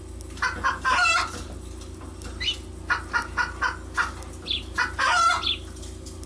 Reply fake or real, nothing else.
real